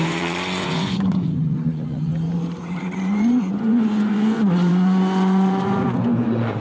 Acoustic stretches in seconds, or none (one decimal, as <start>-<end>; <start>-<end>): 2.1-2.8